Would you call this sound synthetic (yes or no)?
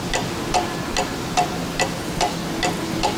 no